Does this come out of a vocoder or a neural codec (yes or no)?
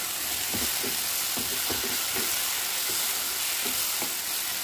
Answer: no